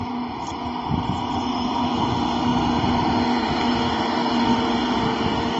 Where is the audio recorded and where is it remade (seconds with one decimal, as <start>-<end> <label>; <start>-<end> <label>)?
0.0-5.6 recorded